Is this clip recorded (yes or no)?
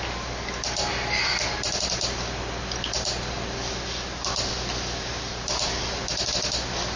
yes